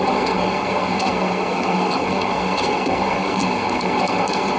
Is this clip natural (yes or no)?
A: no